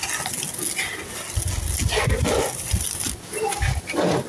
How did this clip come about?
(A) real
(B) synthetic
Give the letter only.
A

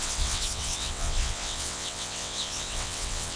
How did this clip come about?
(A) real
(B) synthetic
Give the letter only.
B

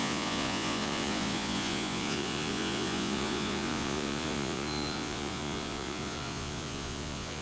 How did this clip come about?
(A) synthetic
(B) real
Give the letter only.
A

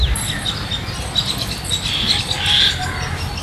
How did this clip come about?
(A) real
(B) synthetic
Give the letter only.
A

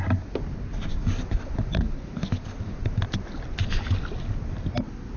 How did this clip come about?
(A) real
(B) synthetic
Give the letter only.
A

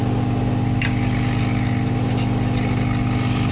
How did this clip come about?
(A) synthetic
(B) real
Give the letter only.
B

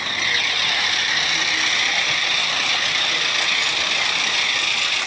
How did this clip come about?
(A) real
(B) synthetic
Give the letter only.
A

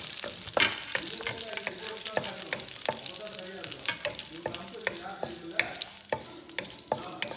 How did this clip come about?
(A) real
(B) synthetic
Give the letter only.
A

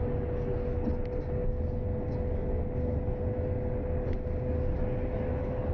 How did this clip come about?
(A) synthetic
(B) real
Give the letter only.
B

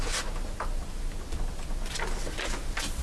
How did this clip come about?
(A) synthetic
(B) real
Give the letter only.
B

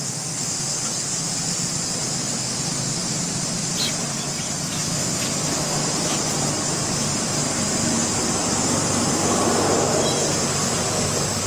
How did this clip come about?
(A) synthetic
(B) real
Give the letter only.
B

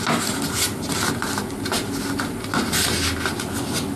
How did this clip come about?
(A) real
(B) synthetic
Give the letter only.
A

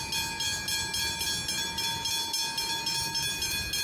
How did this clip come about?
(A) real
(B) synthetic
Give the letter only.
A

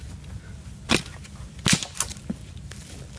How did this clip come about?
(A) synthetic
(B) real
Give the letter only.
B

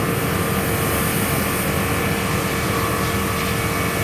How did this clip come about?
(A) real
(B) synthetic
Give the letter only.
A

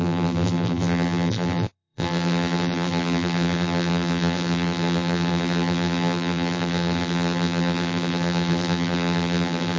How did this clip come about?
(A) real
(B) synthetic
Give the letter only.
B